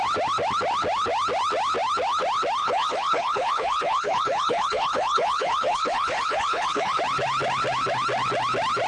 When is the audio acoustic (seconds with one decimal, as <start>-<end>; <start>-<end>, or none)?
0.0-2.6; 7.0-8.9